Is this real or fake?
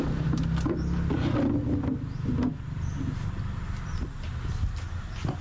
real